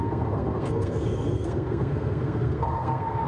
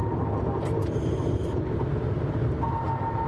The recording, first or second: second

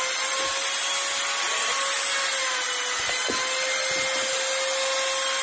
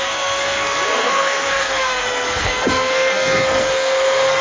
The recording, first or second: first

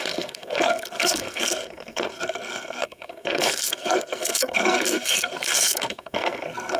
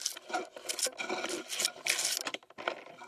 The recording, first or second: second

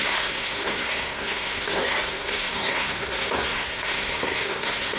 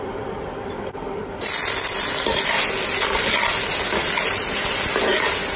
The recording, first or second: second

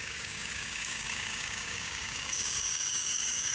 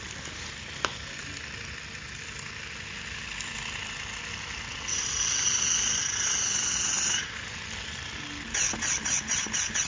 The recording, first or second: second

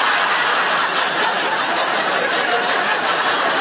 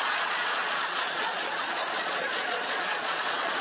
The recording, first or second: first